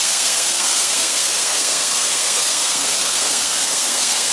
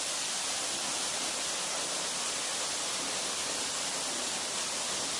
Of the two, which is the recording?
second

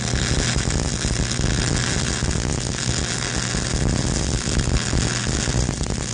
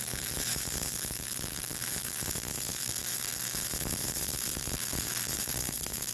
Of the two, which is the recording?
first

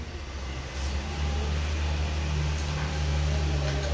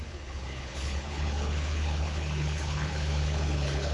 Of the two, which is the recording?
first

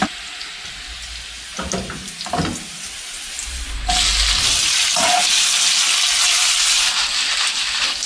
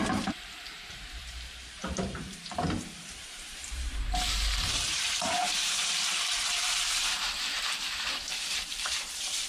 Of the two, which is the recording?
first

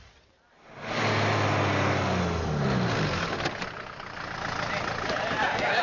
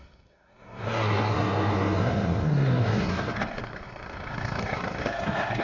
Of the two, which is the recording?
first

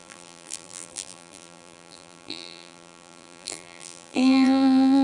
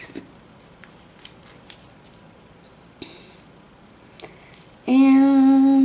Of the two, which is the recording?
second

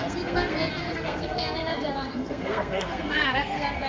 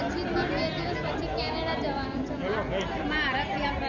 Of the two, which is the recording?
second